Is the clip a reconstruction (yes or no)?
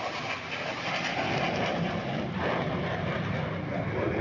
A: no